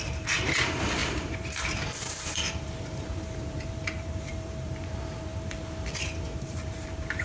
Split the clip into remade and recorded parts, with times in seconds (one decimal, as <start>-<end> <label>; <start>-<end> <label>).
0.0-5.3 remade; 5.3-5.9 recorded; 5.9-7.2 remade